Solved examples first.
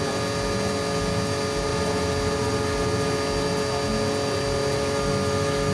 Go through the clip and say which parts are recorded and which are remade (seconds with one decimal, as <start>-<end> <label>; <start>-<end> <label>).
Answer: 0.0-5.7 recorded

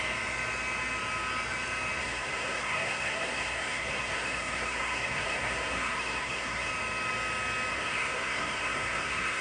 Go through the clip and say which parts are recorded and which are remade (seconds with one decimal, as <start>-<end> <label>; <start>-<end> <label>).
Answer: 0.0-2.0 recorded; 2.0-6.7 remade; 6.7-7.7 recorded; 7.7-9.4 remade

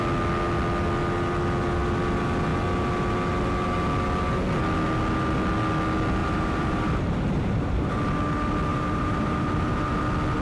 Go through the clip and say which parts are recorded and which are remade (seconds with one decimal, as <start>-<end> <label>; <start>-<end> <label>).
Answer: 0.0-6.2 recorded; 6.2-7.9 remade; 7.9-8.7 recorded; 8.7-10.0 remade; 10.0-10.4 recorded